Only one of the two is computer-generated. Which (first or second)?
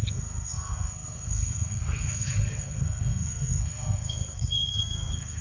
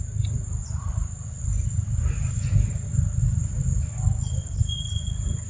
first